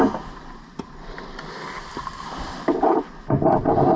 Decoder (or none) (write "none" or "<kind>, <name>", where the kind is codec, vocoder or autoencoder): none